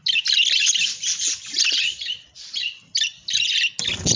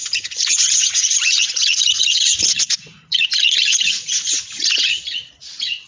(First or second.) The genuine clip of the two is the first